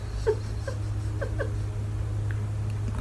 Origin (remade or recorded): recorded